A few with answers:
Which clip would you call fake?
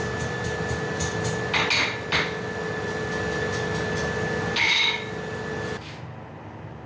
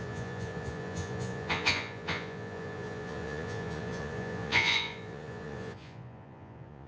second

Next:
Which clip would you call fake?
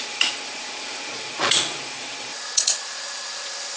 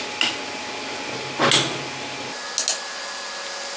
first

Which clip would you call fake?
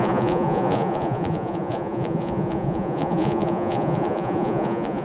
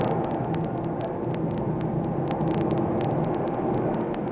first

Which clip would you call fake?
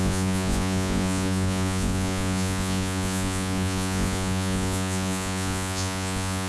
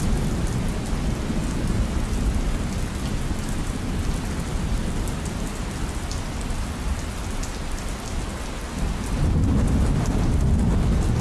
first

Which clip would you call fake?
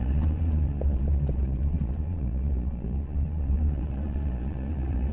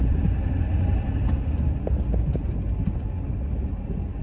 first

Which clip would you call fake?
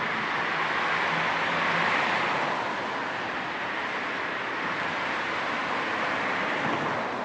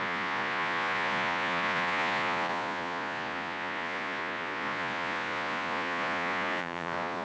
second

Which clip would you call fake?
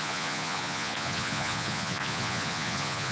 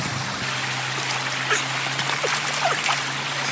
first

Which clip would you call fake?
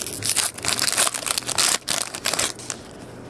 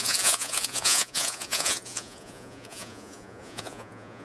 second